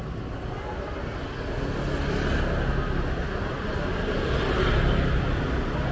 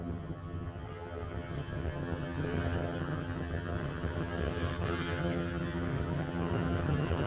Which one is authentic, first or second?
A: first